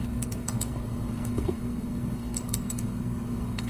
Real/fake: fake